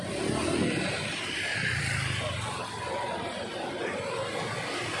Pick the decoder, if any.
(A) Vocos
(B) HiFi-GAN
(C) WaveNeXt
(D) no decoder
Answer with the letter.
D